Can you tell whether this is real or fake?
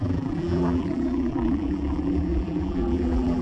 fake